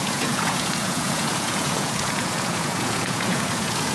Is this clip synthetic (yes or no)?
yes